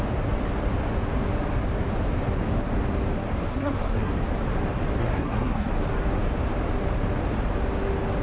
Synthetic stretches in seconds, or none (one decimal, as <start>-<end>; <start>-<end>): 3.5-4.1; 5.0-5.7